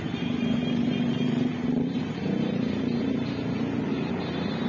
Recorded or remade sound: remade